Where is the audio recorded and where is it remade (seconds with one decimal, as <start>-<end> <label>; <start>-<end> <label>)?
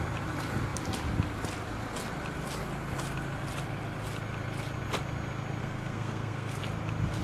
0.0-5.6 recorded; 5.6-6.6 remade; 6.6-7.2 recorded